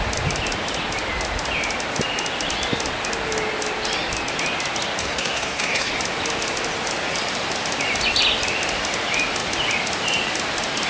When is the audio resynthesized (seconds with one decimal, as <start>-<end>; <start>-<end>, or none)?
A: 5.0-5.9